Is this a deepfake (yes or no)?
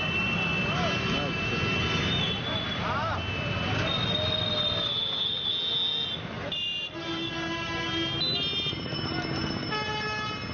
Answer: no